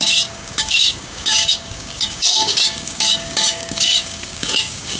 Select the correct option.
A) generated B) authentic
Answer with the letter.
A